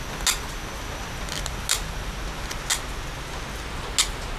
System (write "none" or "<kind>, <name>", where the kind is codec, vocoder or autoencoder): none